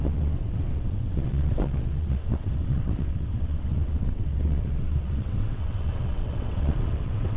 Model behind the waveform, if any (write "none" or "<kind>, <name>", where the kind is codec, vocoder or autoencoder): vocoder, WaveNeXt